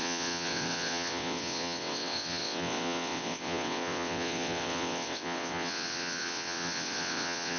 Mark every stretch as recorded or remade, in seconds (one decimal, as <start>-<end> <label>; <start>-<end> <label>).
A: 0.0-7.6 remade